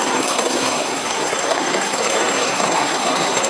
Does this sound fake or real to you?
fake